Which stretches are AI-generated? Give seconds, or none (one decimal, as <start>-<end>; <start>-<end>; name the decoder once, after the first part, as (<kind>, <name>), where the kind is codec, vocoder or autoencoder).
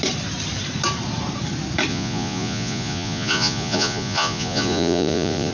1.9-5.5 (vocoder, Vocos)